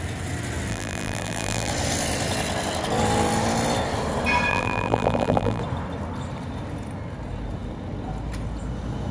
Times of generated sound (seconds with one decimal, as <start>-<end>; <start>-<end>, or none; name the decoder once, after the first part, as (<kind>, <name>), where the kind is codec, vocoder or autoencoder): 0.7-1.7 (vocoder, BigVGAN v2); 4.5-5.6